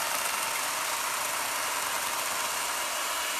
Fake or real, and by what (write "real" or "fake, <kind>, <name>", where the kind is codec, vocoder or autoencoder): fake, vocoder, BigVGAN v2